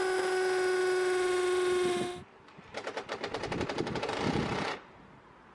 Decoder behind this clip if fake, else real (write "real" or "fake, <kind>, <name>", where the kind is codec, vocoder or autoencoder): real